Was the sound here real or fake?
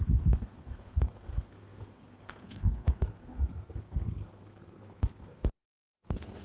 fake